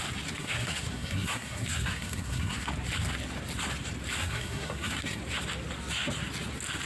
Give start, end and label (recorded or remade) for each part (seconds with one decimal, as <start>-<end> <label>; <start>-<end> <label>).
0.0-0.4 recorded; 0.4-2.7 remade; 2.7-4.2 recorded; 4.2-5.2 remade; 5.2-6.8 recorded